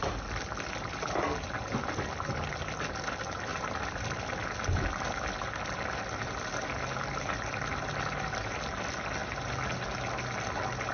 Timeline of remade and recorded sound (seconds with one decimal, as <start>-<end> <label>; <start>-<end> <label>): 0.0-10.9 recorded